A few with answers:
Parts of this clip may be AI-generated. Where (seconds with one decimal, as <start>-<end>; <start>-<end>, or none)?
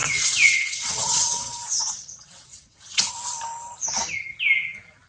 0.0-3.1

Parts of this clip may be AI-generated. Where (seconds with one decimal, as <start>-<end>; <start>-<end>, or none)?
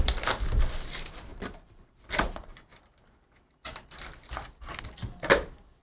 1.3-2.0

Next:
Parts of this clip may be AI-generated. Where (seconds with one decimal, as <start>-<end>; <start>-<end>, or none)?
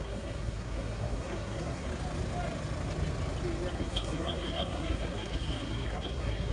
0.0-1.9; 3.7-6.5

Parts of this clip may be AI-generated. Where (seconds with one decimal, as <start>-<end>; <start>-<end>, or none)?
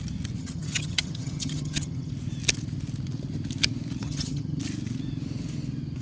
0.4-2.1; 4.0-4.6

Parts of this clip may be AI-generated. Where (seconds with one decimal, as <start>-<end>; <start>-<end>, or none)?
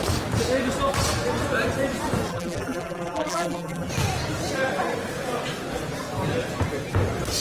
2.3-3.9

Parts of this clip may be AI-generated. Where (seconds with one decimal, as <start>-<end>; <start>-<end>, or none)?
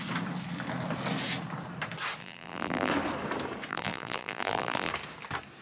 2.2-2.9; 3.7-4.9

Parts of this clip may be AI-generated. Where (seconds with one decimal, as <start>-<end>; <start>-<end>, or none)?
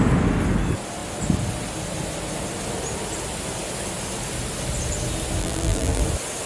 5.4-6.0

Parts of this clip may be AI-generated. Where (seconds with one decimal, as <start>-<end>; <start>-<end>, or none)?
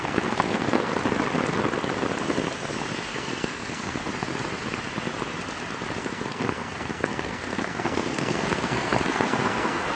0.0-0.9; 3.1-4.1; 6.0-10.0